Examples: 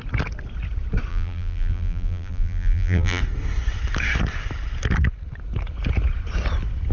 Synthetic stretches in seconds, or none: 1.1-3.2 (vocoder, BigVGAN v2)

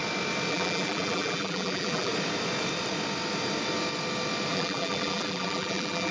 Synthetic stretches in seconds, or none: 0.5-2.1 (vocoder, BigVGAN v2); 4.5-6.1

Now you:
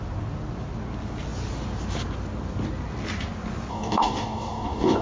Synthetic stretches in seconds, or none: 3.7-5.0 (codec, DAC)

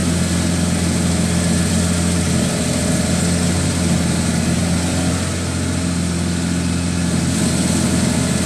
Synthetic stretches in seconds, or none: none